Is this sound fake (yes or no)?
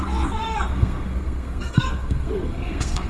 yes